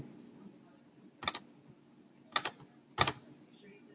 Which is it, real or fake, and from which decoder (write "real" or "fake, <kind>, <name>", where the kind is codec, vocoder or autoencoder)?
real